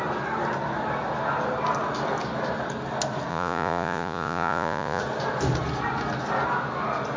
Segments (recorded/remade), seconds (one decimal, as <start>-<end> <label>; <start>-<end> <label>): 0.0-3.3 recorded; 3.3-5.0 remade; 5.0-7.2 recorded